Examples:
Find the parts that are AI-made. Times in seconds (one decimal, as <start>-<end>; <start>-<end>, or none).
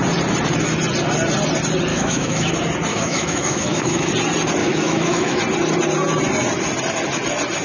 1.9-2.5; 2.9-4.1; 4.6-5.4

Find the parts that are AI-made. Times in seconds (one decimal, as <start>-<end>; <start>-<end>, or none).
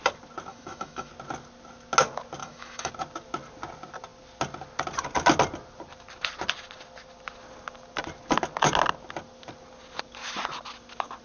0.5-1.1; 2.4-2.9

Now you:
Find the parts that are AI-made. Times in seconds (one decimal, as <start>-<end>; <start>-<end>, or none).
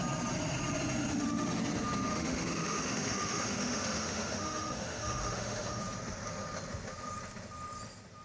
1.1-1.6; 2.1-5.8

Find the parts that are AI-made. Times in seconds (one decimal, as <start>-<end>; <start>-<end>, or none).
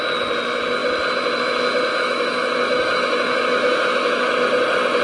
1.9-4.3